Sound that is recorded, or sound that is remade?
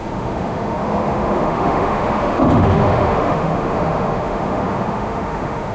remade